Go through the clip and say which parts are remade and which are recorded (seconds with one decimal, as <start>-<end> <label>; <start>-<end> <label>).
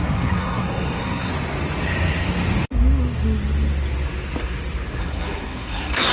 0.0-1.3 remade; 1.3-5.0 recorded; 5.0-6.1 remade